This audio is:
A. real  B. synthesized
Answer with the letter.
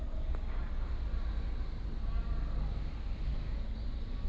A